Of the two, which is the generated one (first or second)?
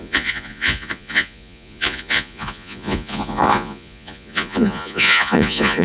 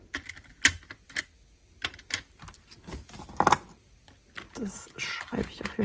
first